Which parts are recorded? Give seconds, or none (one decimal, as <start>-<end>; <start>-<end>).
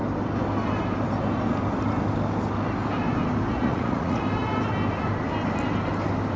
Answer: 0.0-3.5; 4.2-6.4